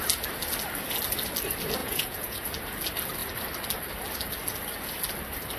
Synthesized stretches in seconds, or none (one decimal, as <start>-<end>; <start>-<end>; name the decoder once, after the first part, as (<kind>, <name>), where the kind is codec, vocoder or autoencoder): 1.8-2.5 (vocoder, Vocos)